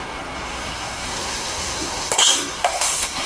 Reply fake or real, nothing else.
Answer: fake